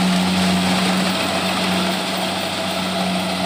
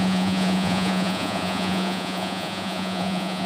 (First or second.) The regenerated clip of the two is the second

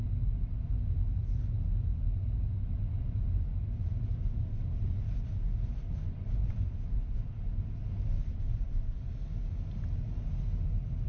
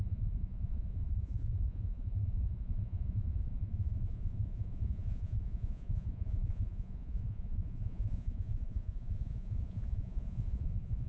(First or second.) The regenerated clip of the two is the second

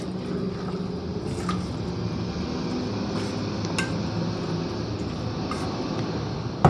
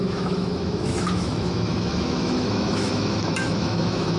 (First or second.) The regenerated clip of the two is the second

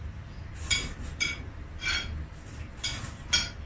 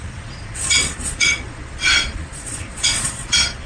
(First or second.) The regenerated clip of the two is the second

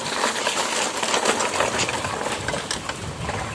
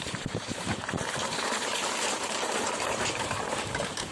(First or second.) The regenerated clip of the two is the second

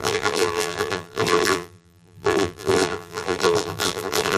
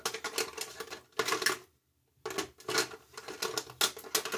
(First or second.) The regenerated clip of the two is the first